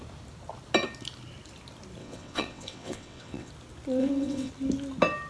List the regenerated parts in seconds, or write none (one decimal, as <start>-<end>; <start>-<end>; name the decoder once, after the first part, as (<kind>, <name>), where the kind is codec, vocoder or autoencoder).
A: 2.0-3.5 (vocoder, WaveNeXt); 4.0-4.5